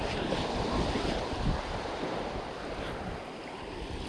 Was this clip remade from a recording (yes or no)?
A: yes